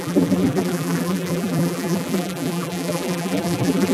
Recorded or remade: remade